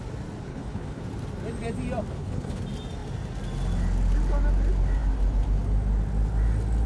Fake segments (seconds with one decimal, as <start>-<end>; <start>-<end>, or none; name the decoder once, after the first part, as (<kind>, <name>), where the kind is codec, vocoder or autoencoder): 0.5-1.0 (codec, HILCodec); 2.1-2.6